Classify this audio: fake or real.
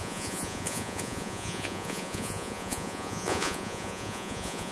fake